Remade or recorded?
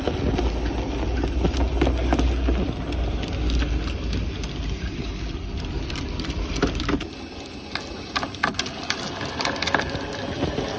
recorded